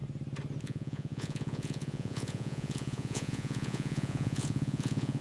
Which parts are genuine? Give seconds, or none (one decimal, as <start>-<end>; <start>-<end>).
0.0-0.6